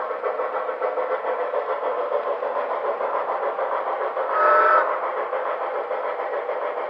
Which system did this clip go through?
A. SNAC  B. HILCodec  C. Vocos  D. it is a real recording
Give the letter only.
D